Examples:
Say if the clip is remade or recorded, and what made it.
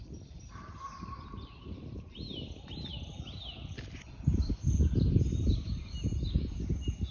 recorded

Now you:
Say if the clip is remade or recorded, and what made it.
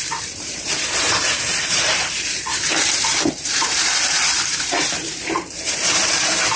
remade, vocoder, BigVGAN v2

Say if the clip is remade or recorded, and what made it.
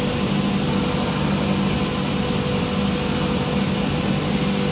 recorded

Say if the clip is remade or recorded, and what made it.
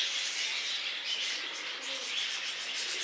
recorded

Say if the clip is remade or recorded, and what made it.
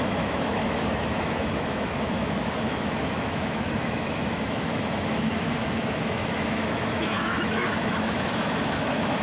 remade, autoencoder, DAC-VAE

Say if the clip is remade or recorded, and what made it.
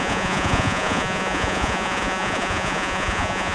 remade, vocoder, Vocos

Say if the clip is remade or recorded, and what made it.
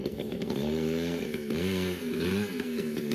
remade, codec, SNAC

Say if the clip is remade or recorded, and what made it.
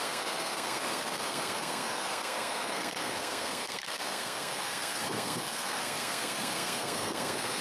remade, codec, SNAC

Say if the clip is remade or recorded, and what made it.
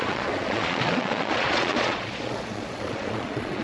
remade, vocoder, Vocos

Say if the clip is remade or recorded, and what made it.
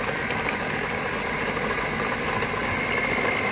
recorded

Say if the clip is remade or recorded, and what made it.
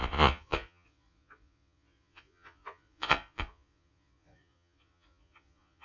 remade, vocoder, Vocos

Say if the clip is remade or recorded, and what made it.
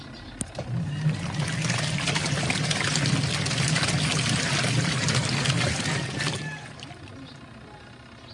recorded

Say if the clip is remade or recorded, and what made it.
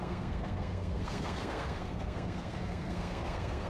remade, codec, SNAC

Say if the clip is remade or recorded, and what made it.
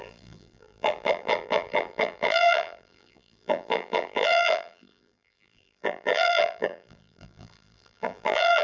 remade, vocoder, BigVGAN v2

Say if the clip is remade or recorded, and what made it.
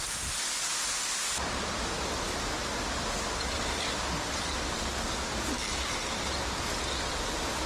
recorded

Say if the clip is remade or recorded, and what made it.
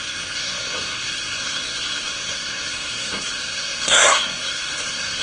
remade, codec, SNAC